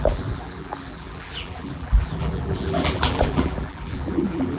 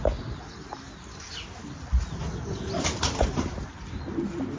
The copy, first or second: first